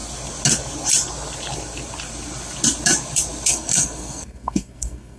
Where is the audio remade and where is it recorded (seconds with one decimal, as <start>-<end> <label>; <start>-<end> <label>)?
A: 0.0-3.5 recorded; 3.5-5.2 remade